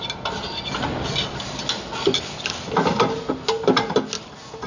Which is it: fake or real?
real